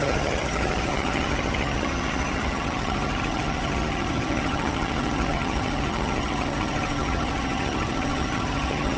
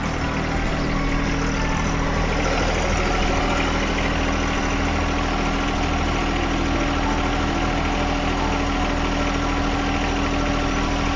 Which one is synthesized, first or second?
first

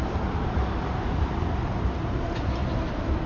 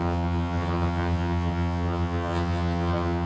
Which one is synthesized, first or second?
second